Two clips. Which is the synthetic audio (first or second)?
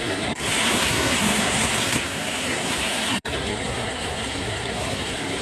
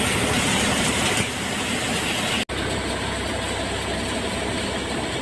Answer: first